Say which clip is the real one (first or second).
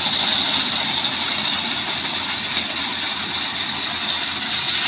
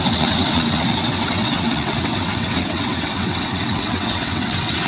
first